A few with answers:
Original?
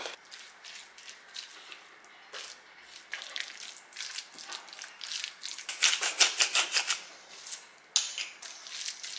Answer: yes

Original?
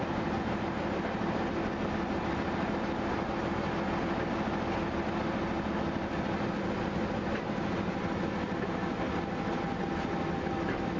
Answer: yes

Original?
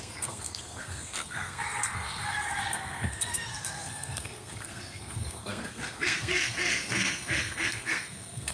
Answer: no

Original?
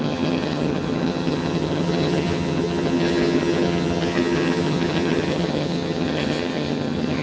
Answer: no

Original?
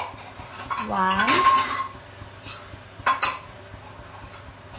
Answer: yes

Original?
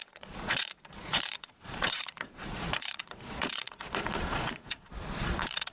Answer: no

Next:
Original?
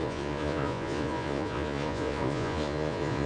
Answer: no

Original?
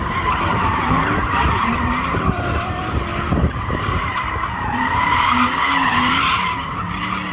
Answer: no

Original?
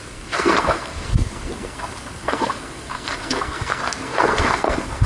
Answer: no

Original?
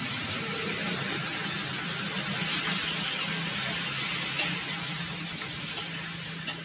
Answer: yes